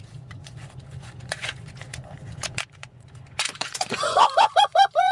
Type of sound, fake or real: fake